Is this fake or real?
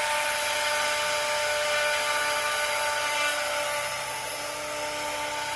real